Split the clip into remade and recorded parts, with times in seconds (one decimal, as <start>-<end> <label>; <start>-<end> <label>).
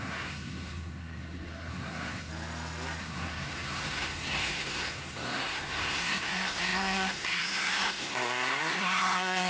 0.0-2.3 remade; 2.3-3.0 recorded; 3.0-9.5 remade